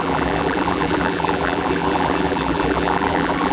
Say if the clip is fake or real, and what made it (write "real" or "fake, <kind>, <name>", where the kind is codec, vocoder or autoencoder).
fake, vocoder, BigVGAN v2